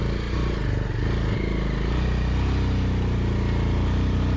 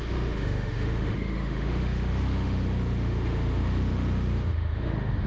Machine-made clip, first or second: second